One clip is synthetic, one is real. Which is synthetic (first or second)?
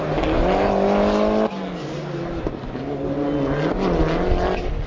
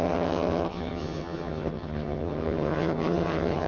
second